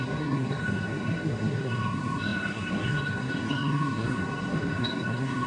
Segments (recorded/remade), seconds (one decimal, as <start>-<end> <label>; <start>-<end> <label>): 0.0-5.5 remade